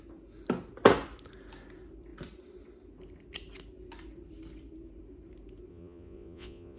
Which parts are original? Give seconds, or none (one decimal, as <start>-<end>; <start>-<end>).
0.0-5.7